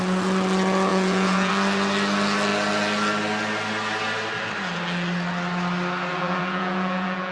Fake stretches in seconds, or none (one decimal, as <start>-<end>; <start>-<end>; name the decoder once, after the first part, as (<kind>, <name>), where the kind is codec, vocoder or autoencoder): 0.9-1.5 (vocoder, Vocos); 6.1-7.3